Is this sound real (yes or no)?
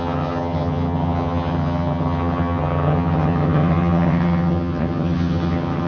no